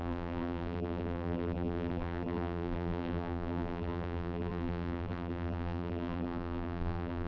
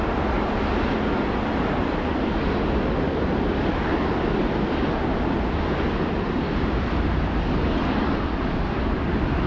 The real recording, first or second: second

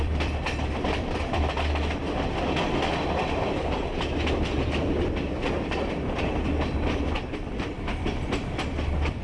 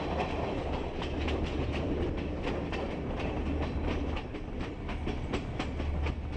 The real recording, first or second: second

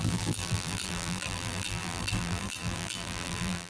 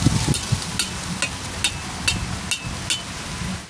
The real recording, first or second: second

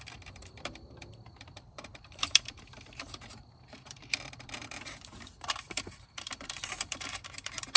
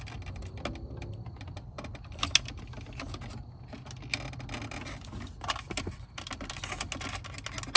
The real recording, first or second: second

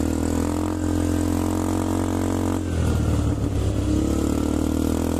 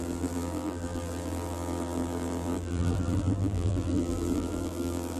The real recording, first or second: first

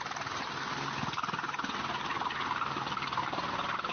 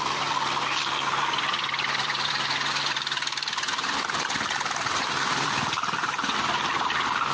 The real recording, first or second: first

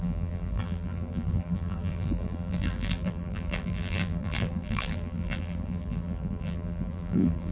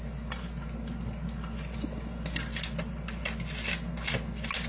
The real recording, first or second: second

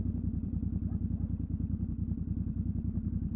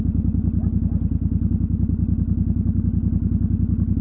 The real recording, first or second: second